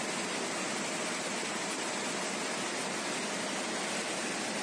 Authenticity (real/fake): real